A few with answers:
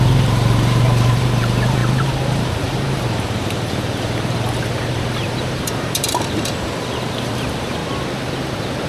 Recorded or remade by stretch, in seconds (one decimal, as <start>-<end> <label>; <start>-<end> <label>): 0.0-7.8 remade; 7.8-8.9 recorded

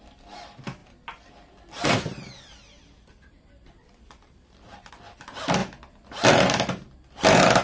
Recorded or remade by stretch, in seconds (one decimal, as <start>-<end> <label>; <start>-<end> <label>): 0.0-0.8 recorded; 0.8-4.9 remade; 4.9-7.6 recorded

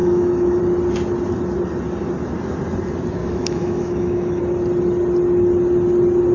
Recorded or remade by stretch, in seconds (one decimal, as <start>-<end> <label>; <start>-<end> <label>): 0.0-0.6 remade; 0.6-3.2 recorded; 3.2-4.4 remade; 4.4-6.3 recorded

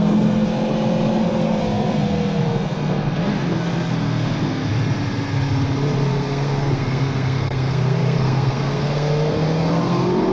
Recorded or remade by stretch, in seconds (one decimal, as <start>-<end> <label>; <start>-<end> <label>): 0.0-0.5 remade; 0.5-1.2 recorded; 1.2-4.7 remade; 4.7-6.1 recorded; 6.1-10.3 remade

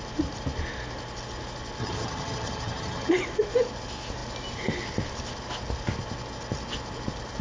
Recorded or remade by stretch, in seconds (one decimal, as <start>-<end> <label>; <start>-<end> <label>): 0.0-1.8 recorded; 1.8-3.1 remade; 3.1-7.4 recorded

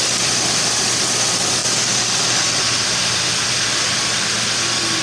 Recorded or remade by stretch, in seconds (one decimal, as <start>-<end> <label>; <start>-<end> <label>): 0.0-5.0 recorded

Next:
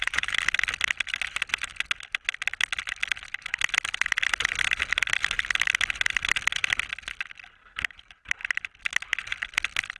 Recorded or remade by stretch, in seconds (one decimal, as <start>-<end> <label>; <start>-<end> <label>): 0.0-10.0 recorded

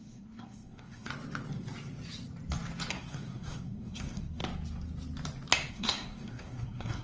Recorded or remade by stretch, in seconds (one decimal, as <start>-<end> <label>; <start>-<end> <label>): 0.0-1.1 remade; 1.1-2.9 recorded; 2.9-4.4 remade; 4.4-5.7 recorded; 5.7-7.0 remade